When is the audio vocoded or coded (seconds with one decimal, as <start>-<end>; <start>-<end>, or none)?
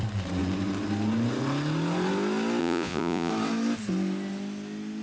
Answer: 2.6-3.3